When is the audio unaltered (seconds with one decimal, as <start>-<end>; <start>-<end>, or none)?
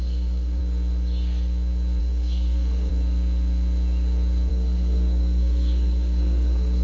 0.6-2.0; 2.9-4.5